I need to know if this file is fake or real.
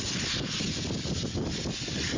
real